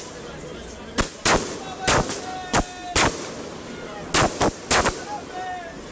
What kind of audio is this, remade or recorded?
recorded